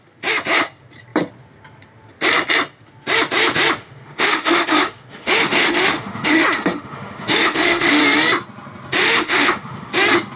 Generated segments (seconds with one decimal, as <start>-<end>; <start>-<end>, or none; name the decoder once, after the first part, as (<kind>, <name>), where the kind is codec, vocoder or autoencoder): 3.8-8.0 (autoencoder, DAC-VAE); 9.0-9.9